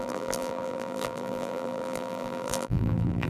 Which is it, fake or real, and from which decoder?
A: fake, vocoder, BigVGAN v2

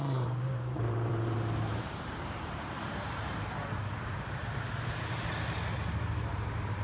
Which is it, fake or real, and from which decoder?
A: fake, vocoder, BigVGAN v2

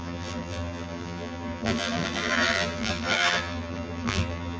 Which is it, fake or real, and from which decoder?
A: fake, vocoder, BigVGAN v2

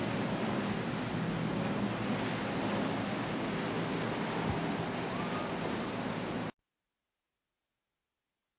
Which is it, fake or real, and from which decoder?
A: real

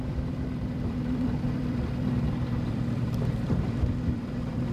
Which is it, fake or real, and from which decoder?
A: fake, vocoder, BigVGAN v2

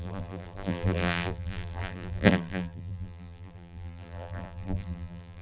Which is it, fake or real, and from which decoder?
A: fake, vocoder, BigVGAN v2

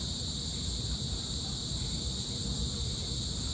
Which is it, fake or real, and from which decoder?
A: fake, vocoder, BigVGAN v2